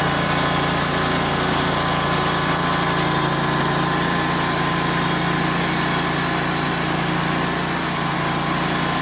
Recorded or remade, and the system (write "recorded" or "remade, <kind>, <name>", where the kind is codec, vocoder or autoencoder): recorded